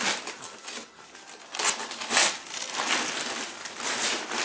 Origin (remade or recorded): recorded